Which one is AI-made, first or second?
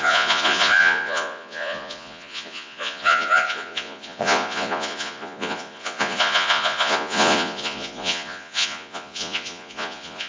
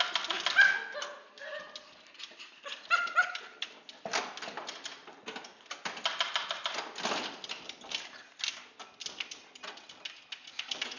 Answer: first